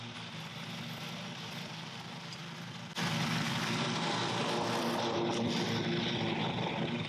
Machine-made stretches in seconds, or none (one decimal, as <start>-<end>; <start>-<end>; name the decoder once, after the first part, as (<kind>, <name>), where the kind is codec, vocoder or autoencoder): none